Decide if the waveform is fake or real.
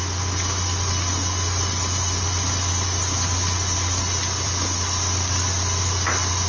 real